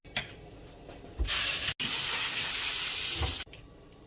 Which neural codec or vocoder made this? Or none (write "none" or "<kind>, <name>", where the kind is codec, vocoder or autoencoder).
none